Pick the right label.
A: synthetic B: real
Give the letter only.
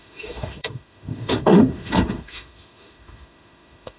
A